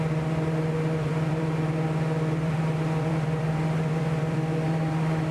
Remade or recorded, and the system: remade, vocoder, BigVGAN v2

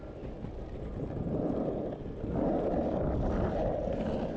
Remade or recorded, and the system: recorded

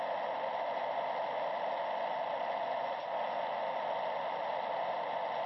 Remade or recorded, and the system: recorded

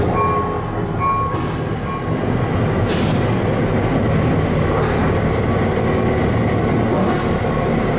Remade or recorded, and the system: recorded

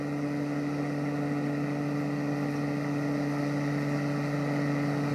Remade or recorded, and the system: recorded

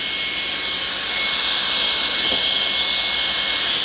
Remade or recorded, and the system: recorded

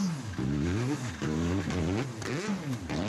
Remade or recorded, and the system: recorded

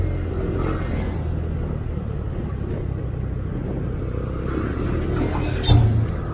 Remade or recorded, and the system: recorded